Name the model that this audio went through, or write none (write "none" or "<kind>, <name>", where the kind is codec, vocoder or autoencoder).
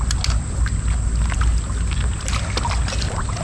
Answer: none